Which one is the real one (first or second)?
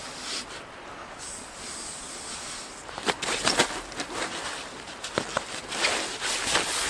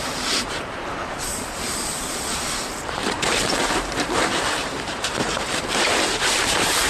first